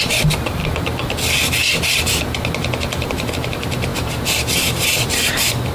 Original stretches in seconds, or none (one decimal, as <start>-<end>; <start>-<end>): 0.6-3.3